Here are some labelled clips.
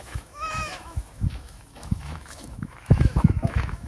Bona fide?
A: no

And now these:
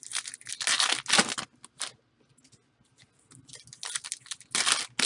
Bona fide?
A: yes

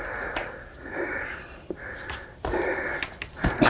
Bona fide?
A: yes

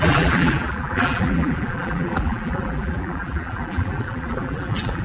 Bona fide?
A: no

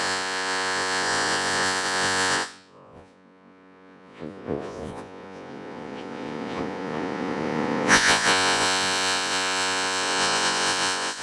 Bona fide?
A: no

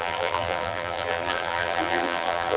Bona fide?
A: no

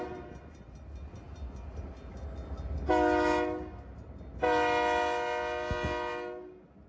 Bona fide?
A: yes